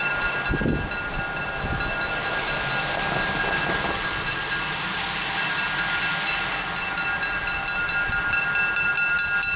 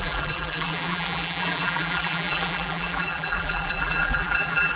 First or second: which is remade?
second